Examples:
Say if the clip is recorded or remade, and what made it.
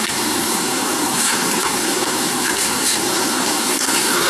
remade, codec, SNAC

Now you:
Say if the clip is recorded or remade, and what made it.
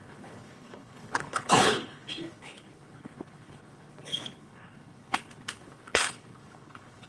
remade, codec, HILCodec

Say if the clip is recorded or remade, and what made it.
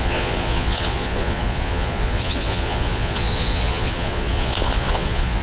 remade, vocoder, Vocos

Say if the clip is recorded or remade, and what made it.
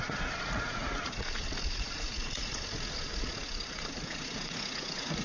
remade, vocoder, Vocos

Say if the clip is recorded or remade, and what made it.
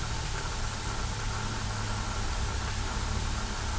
recorded